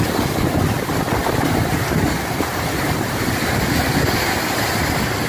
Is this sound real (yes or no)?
yes